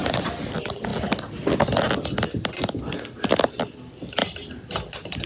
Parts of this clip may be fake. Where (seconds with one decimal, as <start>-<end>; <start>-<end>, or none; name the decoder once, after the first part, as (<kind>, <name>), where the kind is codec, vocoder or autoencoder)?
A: 4.2-5.3 (vocoder, BigVGAN v2)

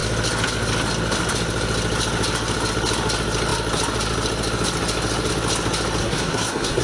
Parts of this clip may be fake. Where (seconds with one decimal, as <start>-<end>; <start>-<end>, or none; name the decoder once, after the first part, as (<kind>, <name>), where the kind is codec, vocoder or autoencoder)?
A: 6.0-6.8 (codec, SNAC)

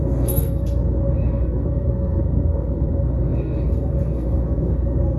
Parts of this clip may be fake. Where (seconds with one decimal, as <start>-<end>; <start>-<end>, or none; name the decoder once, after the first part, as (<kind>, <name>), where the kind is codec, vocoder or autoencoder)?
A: 0.0-0.8 (codec, SNAC); 1.3-5.2

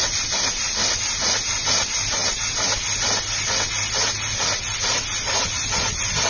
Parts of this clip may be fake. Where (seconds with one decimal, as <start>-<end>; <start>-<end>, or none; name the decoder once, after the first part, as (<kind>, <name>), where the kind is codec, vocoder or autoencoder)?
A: none

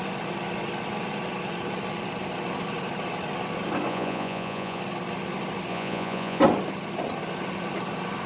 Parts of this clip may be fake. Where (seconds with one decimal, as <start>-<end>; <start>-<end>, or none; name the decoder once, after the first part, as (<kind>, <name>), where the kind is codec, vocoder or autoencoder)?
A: 3.9-4.8 (vocoder, Vocos); 5.7-6.4